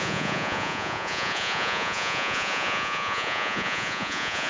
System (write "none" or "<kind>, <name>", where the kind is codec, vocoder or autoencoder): vocoder, Vocos